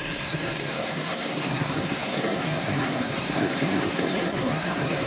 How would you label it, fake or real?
fake